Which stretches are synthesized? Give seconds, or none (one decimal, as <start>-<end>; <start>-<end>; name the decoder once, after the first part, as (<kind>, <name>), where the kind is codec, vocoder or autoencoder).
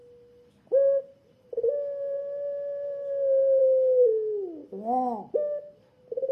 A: none